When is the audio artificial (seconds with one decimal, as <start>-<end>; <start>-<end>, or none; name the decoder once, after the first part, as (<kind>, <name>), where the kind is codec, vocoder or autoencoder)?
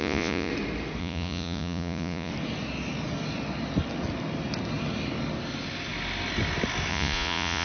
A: 0.0-0.5 (vocoder, Vocos); 1.0-2.3; 6.9-7.6